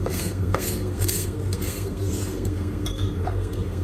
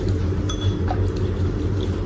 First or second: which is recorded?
second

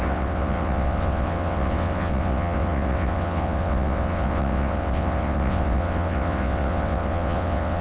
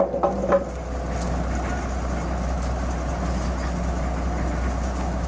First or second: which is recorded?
second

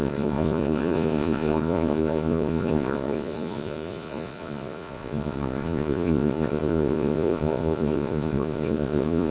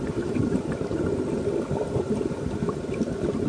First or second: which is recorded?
second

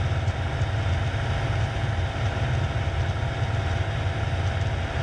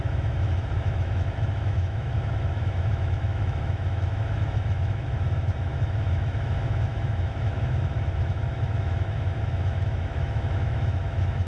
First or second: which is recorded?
first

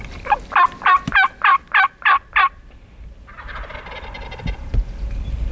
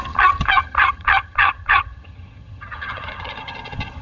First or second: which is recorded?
first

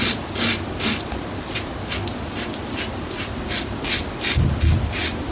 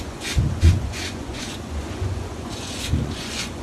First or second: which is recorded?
first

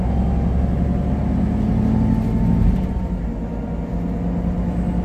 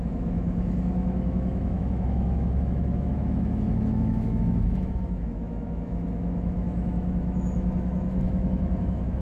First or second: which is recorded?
first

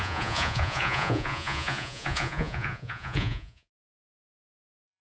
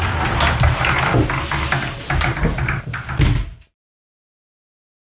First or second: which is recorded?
second